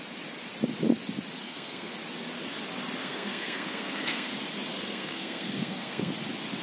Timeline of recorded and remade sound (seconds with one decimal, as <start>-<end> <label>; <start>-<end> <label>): 0.0-1.4 recorded; 1.4-1.9 remade; 1.9-3.0 recorded; 3.0-4.3 remade; 4.3-4.7 recorded; 4.7-6.1 remade; 6.1-6.6 recorded